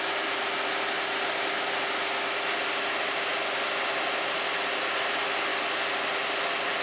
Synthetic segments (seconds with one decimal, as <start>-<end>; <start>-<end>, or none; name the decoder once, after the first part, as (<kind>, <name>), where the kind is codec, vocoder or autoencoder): none